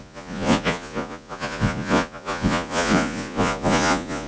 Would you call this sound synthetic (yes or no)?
yes